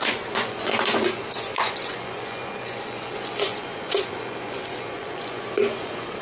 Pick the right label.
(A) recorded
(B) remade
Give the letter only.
B